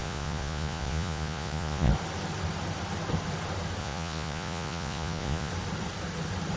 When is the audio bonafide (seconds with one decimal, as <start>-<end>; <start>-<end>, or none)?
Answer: 1.9-3.8; 5.5-6.6